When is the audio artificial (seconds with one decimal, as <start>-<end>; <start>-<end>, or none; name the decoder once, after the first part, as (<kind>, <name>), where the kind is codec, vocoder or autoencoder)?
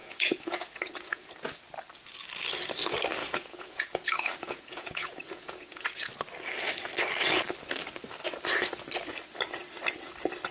0.0-1.3 (vocoder, Vocos); 3.2-6.1